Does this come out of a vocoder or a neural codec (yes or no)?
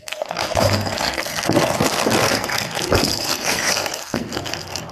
yes